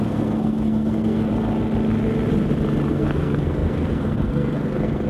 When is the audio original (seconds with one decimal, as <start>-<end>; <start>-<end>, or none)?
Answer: 1.3-2.9